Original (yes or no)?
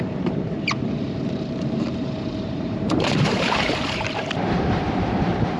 no